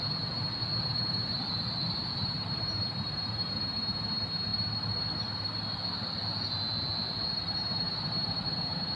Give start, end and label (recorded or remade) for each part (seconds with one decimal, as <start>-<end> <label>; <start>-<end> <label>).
0.0-4.5 remade; 4.5-7.5 recorded; 7.5-9.0 remade